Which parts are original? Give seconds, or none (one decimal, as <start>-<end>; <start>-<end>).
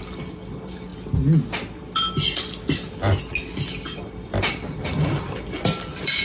0.9-3.7